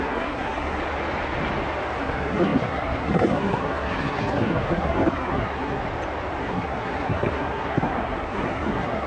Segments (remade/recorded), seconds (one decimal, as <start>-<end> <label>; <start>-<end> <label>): 0.0-0.8 remade; 0.8-2.0 recorded; 2.0-5.8 remade; 5.8-6.4 recorded; 6.4-9.1 remade